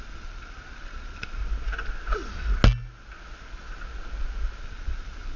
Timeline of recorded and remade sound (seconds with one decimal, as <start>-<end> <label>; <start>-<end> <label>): 0.0-1.4 remade; 1.4-4.6 recorded; 4.6-5.4 remade